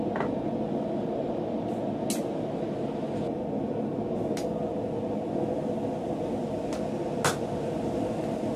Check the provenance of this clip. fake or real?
real